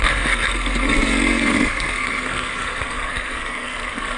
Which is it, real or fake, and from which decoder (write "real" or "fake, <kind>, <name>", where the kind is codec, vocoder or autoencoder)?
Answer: fake, codec, SNAC